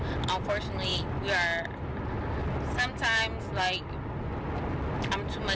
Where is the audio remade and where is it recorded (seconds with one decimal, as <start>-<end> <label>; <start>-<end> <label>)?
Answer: 0.0-5.5 recorded